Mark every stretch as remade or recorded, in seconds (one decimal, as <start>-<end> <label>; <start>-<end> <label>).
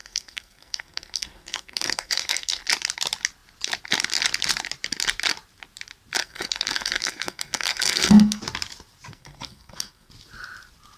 0.0-2.6 remade; 2.6-6.2 recorded; 6.2-8.4 remade; 8.4-9.1 recorded; 9.1-10.1 remade; 10.1-11.0 recorded